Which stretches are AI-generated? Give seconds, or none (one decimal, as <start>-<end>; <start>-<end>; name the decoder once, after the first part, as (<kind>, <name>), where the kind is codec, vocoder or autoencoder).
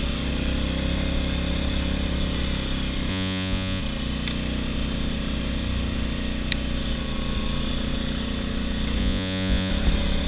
3.1-3.8 (vocoder, Vocos); 9.0-9.7